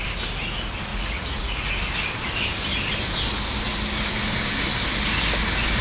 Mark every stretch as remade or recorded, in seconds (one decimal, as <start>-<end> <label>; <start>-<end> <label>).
0.0-0.9 recorded; 0.9-1.7 remade; 1.7-5.8 recorded